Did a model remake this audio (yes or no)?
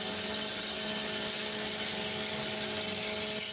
no